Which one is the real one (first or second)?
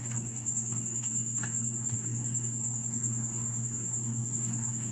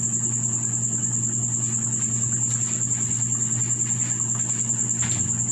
second